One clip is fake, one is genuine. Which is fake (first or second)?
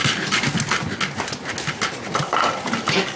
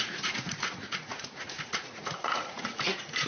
second